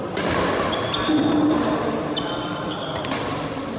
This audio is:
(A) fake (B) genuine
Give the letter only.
B